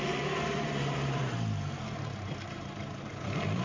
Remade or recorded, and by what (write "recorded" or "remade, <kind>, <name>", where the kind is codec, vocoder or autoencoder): remade, vocoder, BigVGAN v2